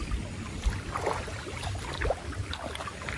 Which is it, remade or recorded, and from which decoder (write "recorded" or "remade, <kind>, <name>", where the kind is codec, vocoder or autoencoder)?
recorded